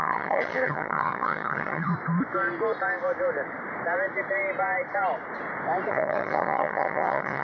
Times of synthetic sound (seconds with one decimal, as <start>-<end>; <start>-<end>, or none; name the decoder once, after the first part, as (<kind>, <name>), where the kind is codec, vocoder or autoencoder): 0.0-1.9 (vocoder, HiFi-GAN); 5.9-7.4